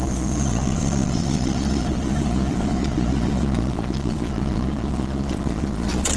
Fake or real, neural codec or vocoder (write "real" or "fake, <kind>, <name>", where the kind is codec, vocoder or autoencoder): fake, vocoder, Vocos